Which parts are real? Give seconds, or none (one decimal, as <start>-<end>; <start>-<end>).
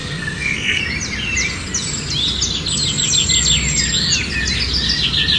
0.8-5.4